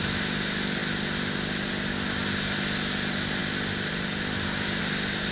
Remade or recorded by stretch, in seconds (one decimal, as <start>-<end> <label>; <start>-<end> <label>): 0.0-5.3 recorded